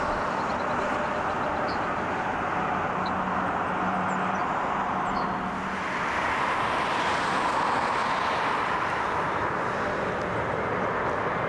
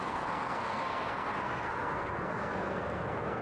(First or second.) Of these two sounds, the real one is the first